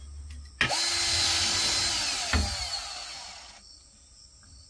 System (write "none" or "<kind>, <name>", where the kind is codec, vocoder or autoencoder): none